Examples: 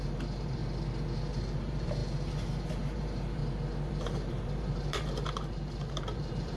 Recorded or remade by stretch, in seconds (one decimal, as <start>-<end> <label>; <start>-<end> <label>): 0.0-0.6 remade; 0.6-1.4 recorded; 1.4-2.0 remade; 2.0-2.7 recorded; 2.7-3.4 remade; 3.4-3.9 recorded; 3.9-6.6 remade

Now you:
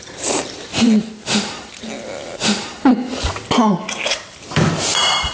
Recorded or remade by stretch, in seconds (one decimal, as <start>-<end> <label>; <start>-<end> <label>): 0.0-0.7 remade; 0.7-3.9 recorded; 3.9-5.3 remade

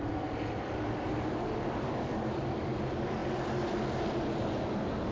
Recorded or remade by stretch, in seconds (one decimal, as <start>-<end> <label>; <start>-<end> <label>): 0.0-5.1 remade